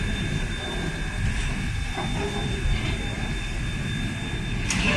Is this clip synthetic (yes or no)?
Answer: no